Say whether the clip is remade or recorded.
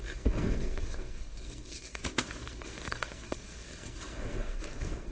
remade